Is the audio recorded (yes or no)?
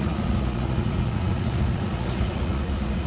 no